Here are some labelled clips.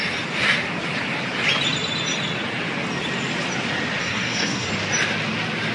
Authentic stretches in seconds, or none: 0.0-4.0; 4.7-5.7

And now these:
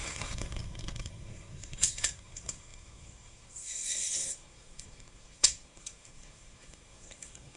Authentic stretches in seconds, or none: none

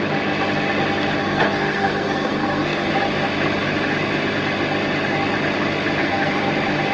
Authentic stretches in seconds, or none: 0.0-1.2; 2.9-6.0; 6.5-6.9

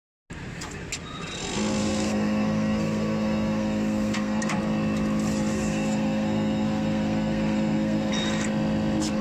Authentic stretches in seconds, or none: 0.0-1.8; 4.4-5.5; 8.1-9.2

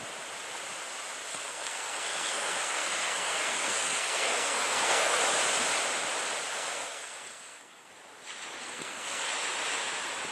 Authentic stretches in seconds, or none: 0.0-1.3; 5.2-6.5; 7.9-8.6; 9.3-10.3

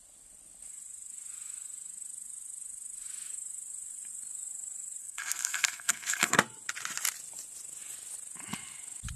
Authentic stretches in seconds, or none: 0.0-5.0; 6.4-9.2